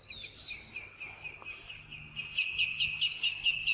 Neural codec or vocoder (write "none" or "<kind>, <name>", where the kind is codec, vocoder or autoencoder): none